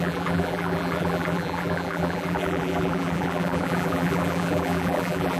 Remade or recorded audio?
remade